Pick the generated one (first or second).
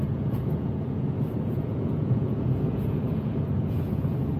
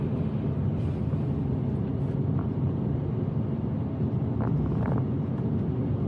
first